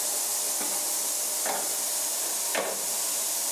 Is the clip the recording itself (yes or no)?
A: yes